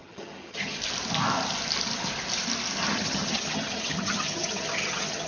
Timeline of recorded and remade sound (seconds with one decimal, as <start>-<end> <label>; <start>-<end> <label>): 0.0-0.8 remade; 0.8-2.9 recorded; 2.9-5.3 remade